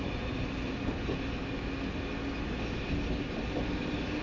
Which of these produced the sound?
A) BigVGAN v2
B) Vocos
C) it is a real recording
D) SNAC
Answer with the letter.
C